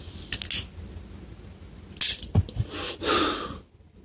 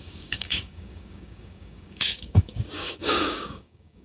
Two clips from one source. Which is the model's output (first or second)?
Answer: second